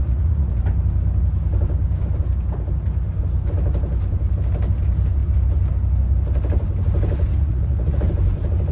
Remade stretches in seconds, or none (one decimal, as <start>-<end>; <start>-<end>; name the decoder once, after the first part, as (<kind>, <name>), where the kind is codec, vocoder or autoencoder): 0.0-0.6 (vocoder, Vocos); 7.4-8.1